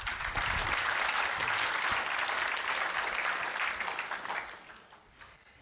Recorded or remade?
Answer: recorded